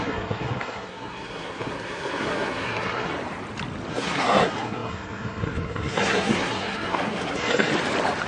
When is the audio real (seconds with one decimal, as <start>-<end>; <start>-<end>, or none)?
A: 3.1-3.9; 7.7-8.3